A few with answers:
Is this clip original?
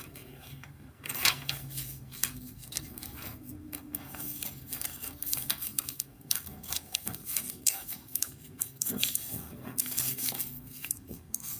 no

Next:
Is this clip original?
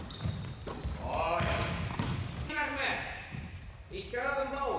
yes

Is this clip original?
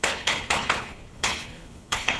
no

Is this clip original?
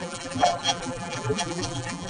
no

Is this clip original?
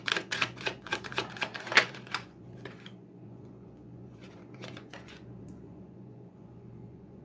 no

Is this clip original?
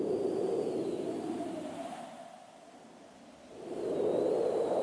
yes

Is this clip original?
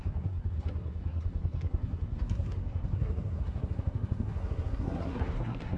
no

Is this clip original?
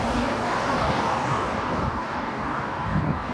no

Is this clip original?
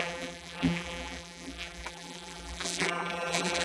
no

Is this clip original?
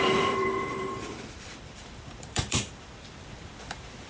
no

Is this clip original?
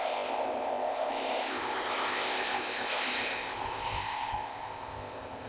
no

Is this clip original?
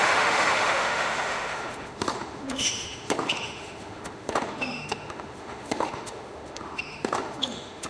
no